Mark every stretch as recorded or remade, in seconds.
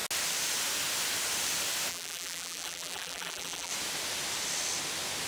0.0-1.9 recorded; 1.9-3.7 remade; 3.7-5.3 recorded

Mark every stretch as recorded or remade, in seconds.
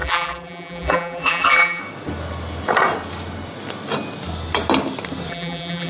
0.0-1.8 remade; 1.8-5.3 recorded; 5.3-5.9 remade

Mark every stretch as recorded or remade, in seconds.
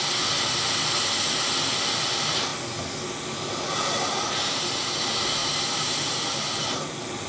0.0-5.4 recorded; 5.4-6.2 remade; 6.2-7.3 recorded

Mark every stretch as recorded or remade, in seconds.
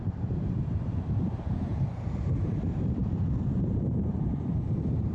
0.0-5.1 remade